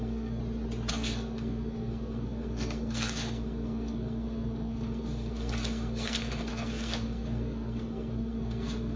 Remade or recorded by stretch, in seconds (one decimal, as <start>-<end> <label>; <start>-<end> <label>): 0.0-0.4 remade; 0.4-0.9 recorded; 0.9-9.0 remade